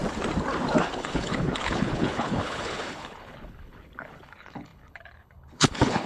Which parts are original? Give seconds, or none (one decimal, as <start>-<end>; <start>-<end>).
0.0-0.8